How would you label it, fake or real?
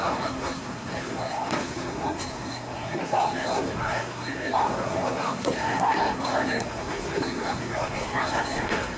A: fake